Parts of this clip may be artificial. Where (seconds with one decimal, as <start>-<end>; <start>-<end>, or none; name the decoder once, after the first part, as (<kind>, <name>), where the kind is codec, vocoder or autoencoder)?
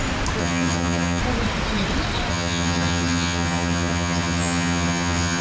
0.4-1.2 (vocoder, HiFi-GAN); 2.3-5.4